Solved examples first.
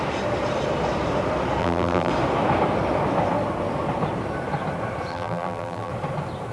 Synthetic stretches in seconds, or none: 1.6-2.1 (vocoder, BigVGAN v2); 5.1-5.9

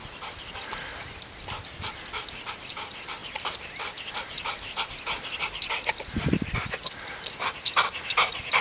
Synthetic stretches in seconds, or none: 3.2-3.7 (vocoder, BigVGAN v2)

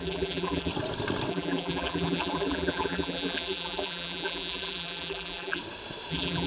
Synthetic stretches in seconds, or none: 0.0-0.7 (vocoder, BigVGAN v2); 1.3-5.6; 6.1-6.5

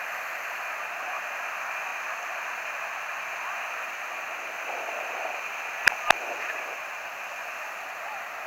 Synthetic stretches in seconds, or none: none

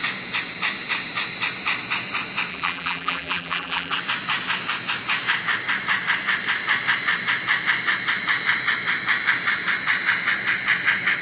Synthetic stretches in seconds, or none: 2.5-4.0 (vocoder, BigVGAN v2)

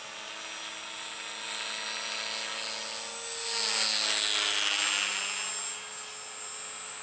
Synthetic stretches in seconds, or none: none

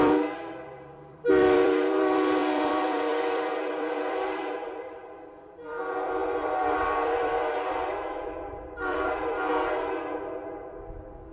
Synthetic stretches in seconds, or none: 0.0-9.5 (vocoder, BigVGAN v2)

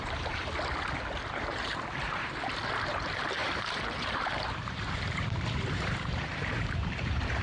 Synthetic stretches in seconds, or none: 0.0-0.4 (vocoder, BigVGAN v2); 1.3-7.4